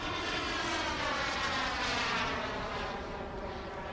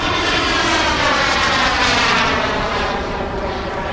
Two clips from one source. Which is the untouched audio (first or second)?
first